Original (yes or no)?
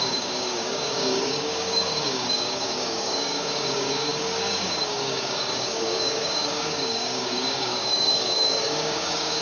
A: no